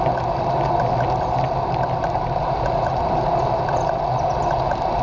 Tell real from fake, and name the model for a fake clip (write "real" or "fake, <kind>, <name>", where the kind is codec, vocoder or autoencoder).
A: real